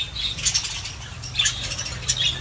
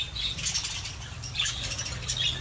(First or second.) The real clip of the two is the first